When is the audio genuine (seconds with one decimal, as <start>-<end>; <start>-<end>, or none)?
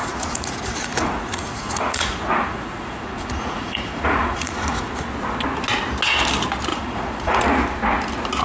4.9-6.7; 7.4-8.4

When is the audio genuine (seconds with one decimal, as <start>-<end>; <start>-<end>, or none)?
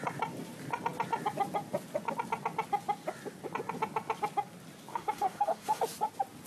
0.0-4.9; 5.8-6.5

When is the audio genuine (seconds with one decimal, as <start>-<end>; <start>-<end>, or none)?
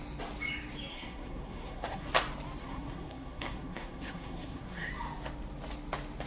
0.0-0.9; 2.1-2.6; 4.9-6.3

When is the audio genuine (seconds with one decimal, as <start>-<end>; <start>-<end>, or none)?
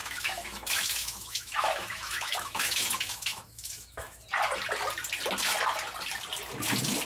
4.2-7.0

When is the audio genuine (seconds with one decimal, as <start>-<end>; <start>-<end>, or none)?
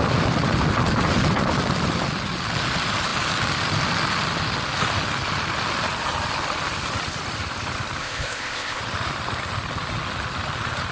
0.0-8.0; 8.8-10.9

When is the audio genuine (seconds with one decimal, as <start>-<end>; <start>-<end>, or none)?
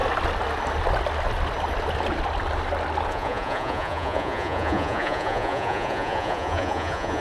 0.0-3.1